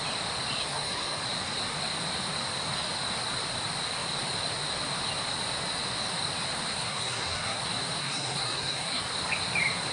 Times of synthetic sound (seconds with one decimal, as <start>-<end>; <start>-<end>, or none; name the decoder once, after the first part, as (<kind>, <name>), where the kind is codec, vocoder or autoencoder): 0.6-1.2 (codec, SNAC); 6.7-7.6; 8.0-9.0